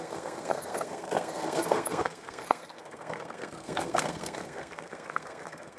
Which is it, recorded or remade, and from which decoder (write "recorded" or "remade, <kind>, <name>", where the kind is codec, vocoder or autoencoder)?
remade, codec, SNAC